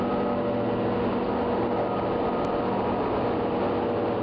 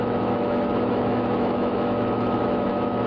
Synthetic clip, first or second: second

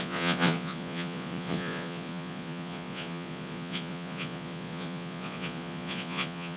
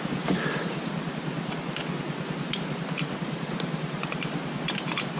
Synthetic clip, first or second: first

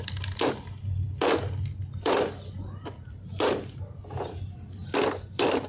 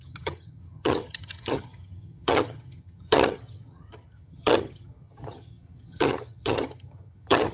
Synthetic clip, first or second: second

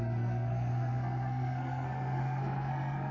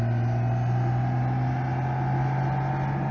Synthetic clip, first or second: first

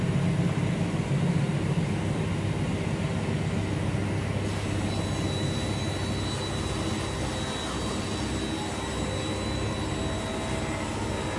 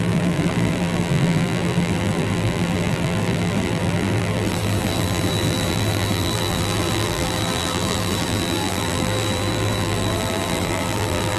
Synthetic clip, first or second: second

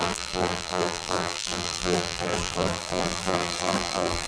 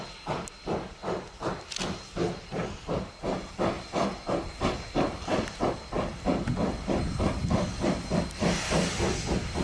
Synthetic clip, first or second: first